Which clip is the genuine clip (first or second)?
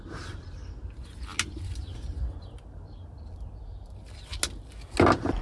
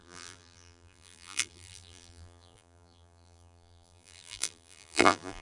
first